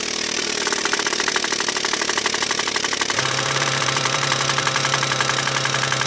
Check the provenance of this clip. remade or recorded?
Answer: remade